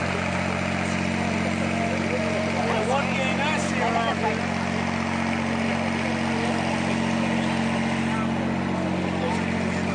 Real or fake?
real